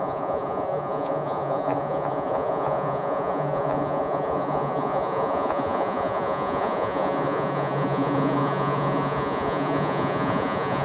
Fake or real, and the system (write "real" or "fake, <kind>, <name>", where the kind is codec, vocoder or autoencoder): fake, vocoder, Vocos